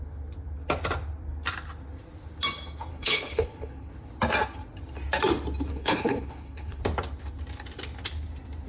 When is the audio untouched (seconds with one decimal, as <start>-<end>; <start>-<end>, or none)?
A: 0.0-2.9; 3.9-5.7; 6.8-8.7